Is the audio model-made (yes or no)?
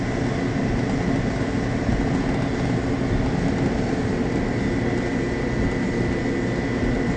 no